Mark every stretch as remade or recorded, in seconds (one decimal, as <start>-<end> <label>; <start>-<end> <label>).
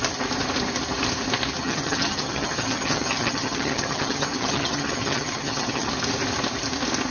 0.0-1.6 recorded; 1.6-5.9 remade; 5.9-7.1 recorded